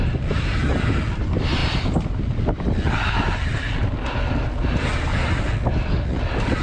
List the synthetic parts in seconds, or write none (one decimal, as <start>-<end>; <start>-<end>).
none